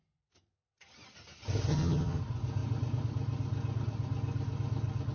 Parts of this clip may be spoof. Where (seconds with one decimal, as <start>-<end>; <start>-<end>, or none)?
1.7-2.2